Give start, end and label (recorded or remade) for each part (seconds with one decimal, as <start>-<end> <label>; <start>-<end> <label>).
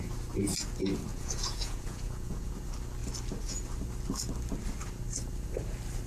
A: 0.0-1.1 recorded; 1.1-2.5 remade; 2.5-6.1 recorded